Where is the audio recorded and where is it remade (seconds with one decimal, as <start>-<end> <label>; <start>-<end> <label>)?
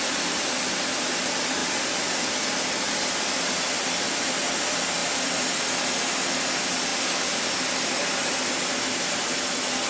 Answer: 0.0-1.6 recorded; 1.6-2.4 remade; 2.4-9.9 recorded